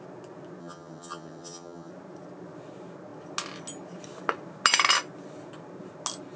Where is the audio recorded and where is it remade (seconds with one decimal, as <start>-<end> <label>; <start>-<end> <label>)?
0.0-0.6 recorded; 0.6-1.9 remade; 1.9-6.4 recorded